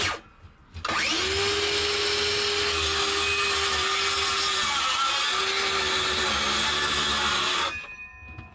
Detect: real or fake real